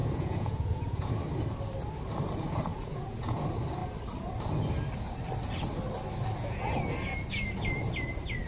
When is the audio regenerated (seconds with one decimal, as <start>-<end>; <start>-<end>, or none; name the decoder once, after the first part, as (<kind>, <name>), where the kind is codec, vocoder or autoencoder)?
0.0-1.1 (vocoder, Vocos); 2.7-3.4